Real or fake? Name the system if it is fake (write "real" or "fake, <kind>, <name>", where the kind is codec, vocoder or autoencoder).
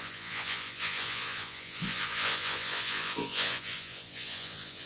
fake, vocoder, Vocos